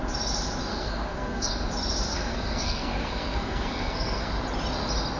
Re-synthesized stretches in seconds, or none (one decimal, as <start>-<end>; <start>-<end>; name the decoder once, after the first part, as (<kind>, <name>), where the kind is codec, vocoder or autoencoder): 0.7-1.5 (codec, SNAC); 2.1-4.3